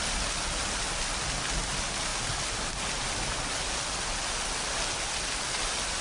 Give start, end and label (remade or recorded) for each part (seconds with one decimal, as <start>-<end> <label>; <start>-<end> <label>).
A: 0.0-6.0 recorded